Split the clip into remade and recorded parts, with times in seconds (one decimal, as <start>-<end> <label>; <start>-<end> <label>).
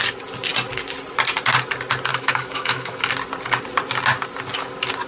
0.0-2.1 recorded; 2.1-3.0 remade; 3.0-5.1 recorded